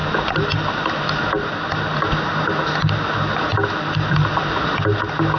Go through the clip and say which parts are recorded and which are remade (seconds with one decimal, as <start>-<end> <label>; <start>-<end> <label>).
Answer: 0.0-5.4 recorded